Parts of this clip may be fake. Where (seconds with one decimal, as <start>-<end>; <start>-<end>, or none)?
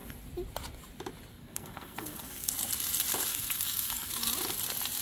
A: 1.3-2.5; 3.3-4.1